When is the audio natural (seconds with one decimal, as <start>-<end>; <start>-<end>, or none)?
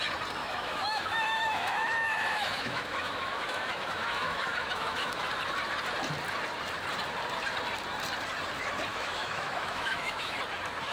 0.0-0.4; 5.3-8.9; 10.4-10.9